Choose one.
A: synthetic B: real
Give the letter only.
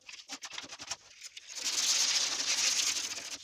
B